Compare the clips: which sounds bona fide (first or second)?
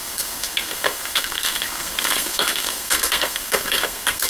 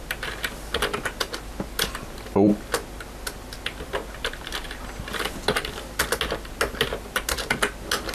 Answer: second